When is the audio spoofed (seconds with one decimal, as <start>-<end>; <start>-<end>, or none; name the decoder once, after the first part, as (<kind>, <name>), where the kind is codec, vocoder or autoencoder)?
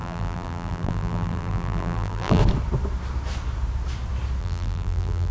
0.0-2.4 (vocoder, BigVGAN v2); 4.4-5.3